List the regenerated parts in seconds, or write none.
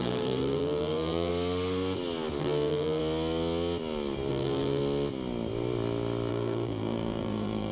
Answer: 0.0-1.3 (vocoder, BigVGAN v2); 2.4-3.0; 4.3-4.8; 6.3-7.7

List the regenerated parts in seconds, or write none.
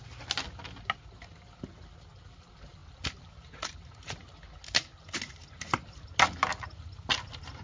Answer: none